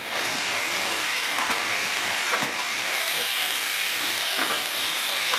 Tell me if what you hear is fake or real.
fake